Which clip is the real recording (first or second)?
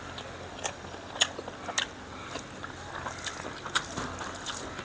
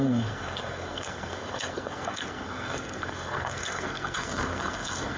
first